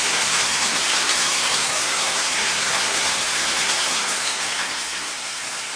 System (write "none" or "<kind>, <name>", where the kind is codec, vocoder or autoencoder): codec, SNAC